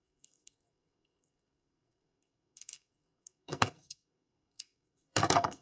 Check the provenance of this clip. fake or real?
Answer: fake